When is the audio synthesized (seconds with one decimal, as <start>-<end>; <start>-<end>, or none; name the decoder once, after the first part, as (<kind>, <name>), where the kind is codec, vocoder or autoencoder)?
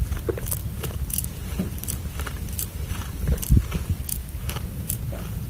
0.6-3.5 (vocoder, BigVGAN v2); 4.2-5.0